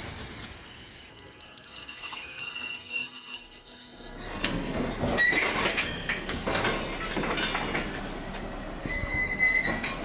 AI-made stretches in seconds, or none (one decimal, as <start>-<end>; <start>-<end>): 1.1-4.9; 5.7-6.6; 8.8-9.6